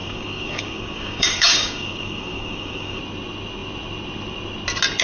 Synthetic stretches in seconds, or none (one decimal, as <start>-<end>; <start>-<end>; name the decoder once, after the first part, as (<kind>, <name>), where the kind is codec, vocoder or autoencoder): 0.0-3.0 (codec, DAC)